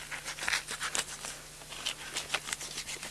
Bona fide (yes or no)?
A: yes